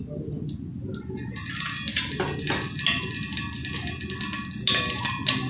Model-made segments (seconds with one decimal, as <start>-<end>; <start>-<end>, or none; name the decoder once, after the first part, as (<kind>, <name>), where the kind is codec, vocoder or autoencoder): none